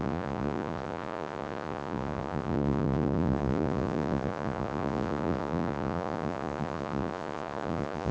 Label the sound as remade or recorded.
remade